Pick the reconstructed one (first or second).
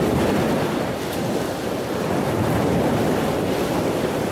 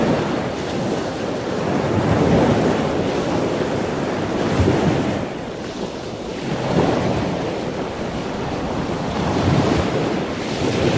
first